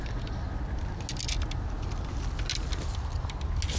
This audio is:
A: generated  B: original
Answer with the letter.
B